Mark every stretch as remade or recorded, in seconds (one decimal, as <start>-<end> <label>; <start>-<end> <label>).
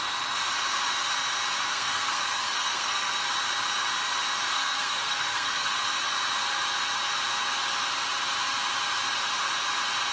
0.0-1.7 recorded; 1.7-3.2 remade; 3.2-4.5 recorded; 4.5-5.7 remade; 5.7-10.1 recorded